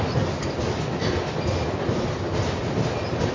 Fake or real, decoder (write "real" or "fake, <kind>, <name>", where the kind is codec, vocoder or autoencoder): real